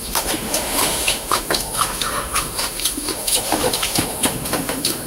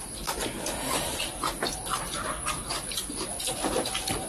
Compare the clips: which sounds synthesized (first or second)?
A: first